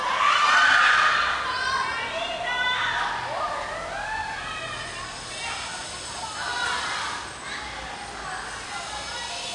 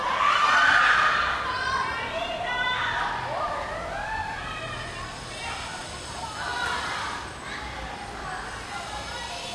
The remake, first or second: second